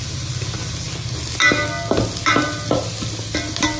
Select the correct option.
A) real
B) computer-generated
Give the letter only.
A